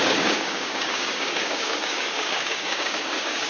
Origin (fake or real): fake